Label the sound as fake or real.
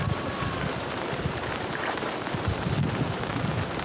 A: fake